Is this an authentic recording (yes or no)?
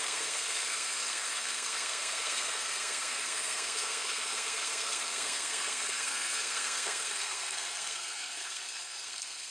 no